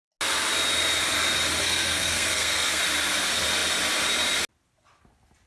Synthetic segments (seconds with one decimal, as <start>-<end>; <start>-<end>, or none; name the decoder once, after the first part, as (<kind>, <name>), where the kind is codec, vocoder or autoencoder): 1.6-2.8 (codec, SNAC)